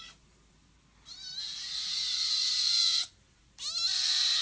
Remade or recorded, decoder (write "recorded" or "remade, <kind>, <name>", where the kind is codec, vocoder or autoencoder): recorded